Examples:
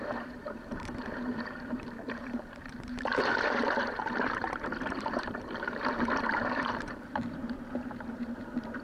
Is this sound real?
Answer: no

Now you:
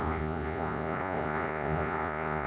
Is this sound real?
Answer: no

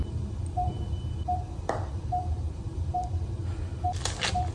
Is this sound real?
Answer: yes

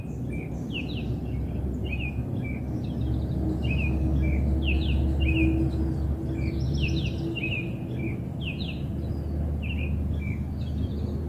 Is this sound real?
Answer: yes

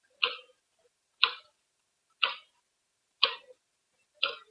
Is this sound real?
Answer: yes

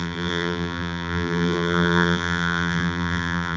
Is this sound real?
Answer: no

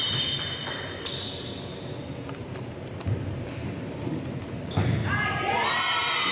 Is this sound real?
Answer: yes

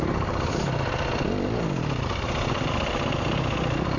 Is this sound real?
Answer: yes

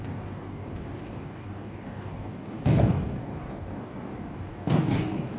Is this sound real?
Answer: no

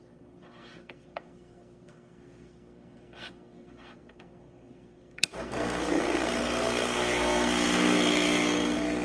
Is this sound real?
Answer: no